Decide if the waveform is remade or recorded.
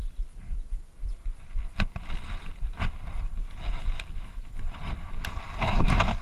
recorded